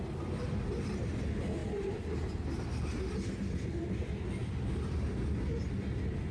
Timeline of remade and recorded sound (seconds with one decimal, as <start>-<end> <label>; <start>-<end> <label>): 0.0-6.3 recorded